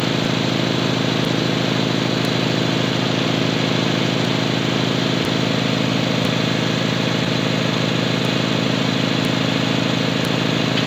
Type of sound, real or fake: real